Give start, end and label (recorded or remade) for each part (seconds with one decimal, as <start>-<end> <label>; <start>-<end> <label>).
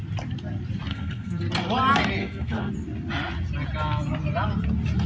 0.0-0.9 recorded; 0.9-1.4 remade; 1.4-2.2 recorded; 2.2-2.7 remade; 2.7-5.1 recorded